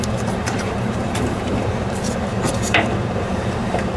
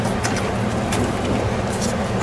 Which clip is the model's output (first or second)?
first